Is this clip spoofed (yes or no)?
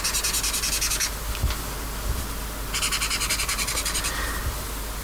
no